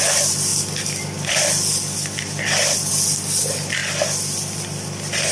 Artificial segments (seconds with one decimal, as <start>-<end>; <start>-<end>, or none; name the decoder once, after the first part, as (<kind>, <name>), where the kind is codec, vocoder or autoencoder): none